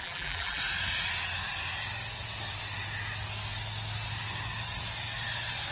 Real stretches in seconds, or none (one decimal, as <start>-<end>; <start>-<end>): 0.6-5.7